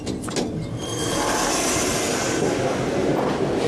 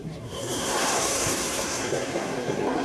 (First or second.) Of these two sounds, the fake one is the second